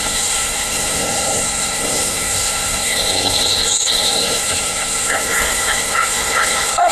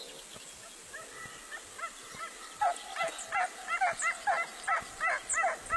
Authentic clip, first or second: second